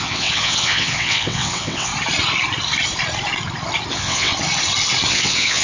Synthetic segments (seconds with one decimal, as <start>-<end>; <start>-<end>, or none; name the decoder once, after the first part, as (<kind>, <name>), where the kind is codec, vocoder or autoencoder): 0.0-1.9 (vocoder, WaveNeXt); 3.9-4.3; 5.1-5.6